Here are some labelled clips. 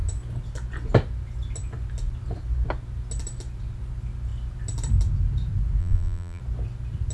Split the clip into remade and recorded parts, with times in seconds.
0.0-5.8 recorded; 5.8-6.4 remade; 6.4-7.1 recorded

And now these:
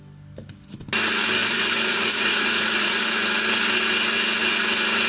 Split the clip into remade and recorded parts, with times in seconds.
0.0-1.4 recorded; 1.4-3.0 remade; 3.0-5.1 recorded